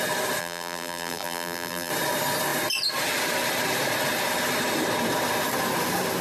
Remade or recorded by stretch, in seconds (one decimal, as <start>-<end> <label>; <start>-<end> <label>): 0.0-0.4 recorded; 0.4-1.9 remade; 1.9-6.2 recorded